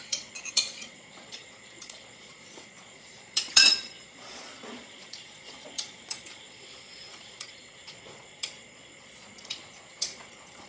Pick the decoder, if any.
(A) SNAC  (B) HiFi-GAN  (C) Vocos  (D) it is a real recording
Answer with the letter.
C